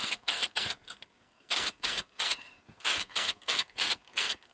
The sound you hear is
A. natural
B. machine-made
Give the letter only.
B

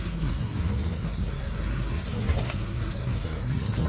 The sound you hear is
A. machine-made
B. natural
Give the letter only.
A